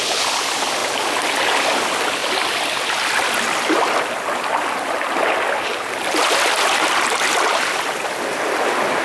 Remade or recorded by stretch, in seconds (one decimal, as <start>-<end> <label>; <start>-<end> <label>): 0.0-9.0 recorded